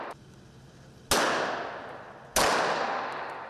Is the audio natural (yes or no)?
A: yes